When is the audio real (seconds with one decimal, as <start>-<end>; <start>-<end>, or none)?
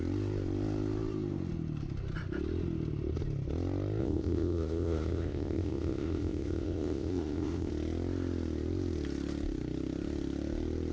0.0-4.0; 7.7-10.9